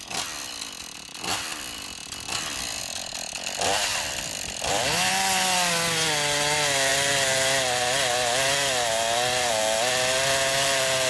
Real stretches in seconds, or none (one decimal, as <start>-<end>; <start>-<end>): 0.0-3.9; 5.1-11.1